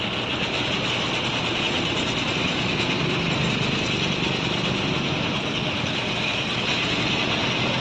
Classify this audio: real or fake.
real